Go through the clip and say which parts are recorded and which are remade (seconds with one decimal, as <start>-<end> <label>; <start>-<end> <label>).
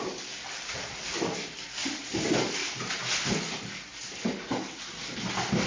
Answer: 0.0-5.7 recorded